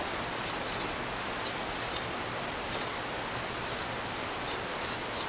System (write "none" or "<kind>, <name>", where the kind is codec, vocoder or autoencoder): none